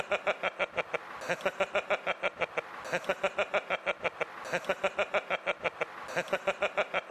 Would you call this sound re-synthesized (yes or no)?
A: no